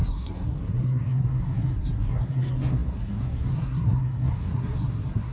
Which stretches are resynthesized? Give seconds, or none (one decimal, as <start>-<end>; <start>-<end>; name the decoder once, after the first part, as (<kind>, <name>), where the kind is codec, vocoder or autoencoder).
0.0-5.3 (codec, SNAC)